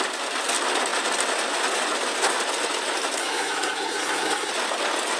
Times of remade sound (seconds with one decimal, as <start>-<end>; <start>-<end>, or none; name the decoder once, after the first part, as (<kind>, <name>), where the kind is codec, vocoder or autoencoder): 3.2-4.5 (codec, SNAC)